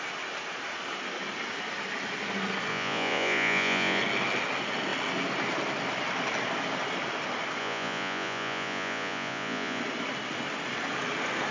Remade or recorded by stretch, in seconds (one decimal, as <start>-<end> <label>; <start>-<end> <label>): 0.0-2.7 recorded; 2.7-4.0 remade; 4.0-7.6 recorded; 7.6-9.8 remade; 9.8-11.5 recorded